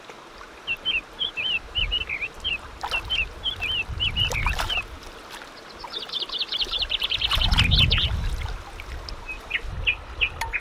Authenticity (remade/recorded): recorded